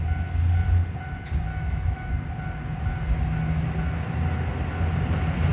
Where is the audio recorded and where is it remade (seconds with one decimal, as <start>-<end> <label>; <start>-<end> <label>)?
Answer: 0.0-1.5 recorded; 1.5-2.1 remade; 2.1-5.5 recorded